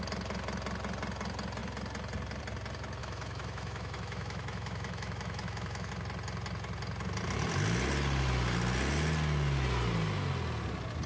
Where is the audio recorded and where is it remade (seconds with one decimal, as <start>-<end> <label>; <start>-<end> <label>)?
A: 0.0-3.0 recorded; 3.0-5.9 remade; 5.9-11.1 recorded